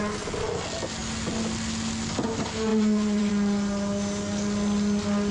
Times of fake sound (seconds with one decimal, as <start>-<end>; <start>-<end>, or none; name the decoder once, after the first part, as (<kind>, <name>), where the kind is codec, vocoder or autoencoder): 2.7-3.3 (vocoder, Vocos)